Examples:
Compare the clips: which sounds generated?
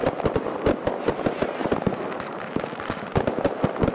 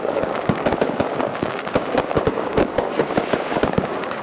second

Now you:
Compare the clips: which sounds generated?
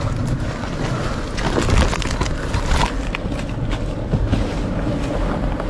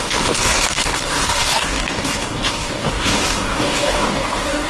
second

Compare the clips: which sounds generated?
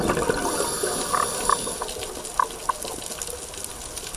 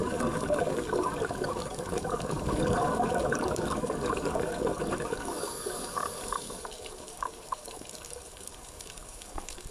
second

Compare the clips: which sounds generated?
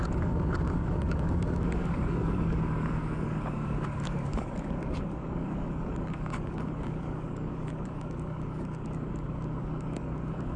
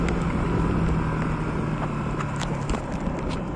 first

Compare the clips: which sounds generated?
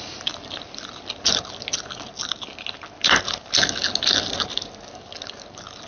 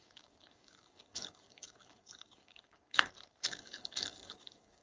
second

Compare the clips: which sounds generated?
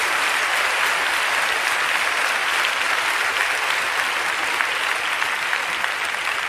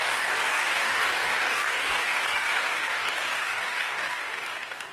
second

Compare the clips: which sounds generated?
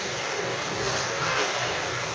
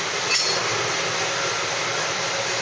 first